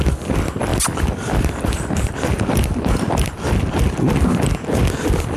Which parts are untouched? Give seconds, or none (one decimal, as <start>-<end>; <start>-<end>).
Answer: 0.0-0.7; 3.9-5.4

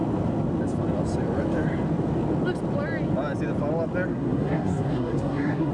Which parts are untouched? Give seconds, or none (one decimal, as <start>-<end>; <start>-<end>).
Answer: 0.0-4.1

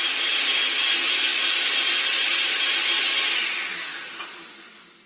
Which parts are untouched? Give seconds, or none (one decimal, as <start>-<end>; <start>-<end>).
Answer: 0.0-5.1

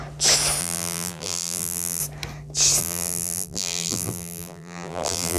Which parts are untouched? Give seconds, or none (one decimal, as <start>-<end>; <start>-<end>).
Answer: 0.0-0.6; 2.0-2.8

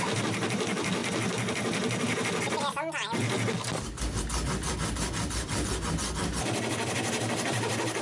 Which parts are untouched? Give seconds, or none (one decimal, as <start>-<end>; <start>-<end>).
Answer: 0.0-8.0